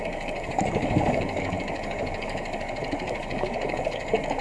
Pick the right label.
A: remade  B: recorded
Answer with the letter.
A